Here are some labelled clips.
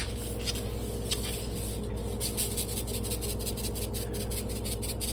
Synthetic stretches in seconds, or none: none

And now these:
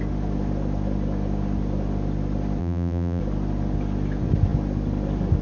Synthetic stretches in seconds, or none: 2.6-3.2 (vocoder, BigVGAN v2)

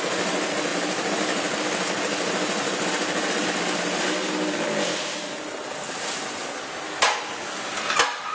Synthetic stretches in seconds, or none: 0.7-1.6 (vocoder, BigVGAN v2)

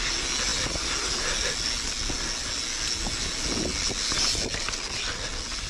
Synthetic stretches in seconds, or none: none